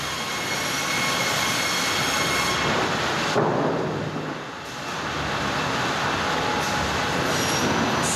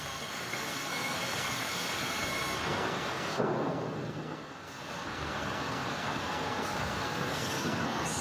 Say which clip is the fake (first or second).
second